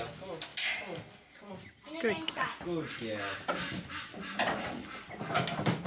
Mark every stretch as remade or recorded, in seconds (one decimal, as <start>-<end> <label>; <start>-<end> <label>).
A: 0.0-5.9 recorded